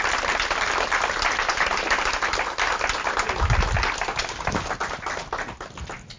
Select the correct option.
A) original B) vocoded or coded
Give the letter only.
A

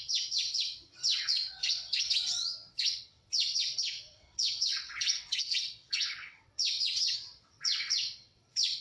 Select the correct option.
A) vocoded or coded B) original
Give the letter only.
A